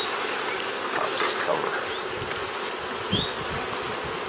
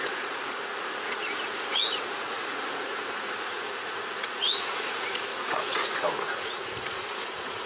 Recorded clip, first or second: first